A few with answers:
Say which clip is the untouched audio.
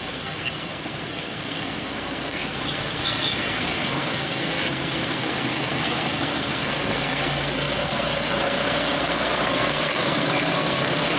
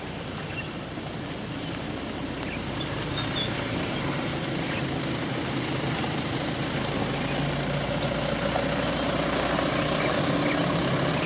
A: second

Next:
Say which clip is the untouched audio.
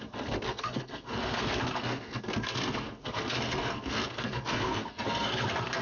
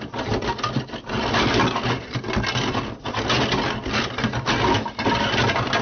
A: second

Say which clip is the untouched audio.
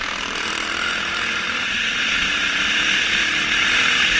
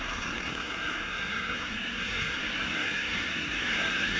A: first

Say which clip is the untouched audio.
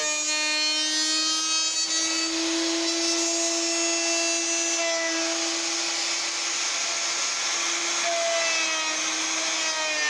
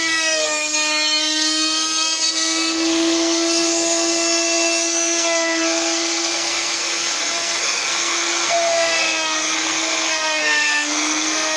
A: first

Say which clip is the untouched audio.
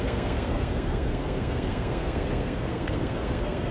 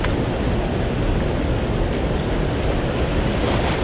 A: second